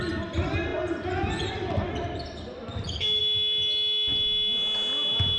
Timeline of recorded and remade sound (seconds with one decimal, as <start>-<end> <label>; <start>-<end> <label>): 0.0-5.4 recorded